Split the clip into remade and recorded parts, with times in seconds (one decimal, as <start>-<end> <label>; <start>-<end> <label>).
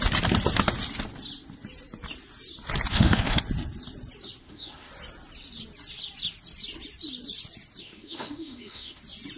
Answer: 0.0-2.9 recorded; 2.9-3.4 remade; 3.4-4.4 recorded; 4.4-4.9 remade; 4.9-7.8 recorded; 7.8-9.0 remade; 9.0-9.4 recorded